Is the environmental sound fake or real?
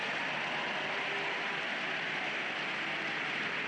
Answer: real